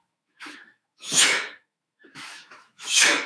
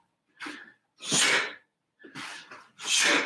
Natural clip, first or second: second